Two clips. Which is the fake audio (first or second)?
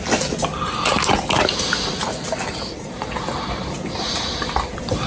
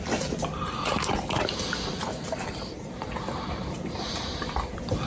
second